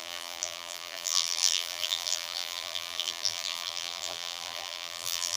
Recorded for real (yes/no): no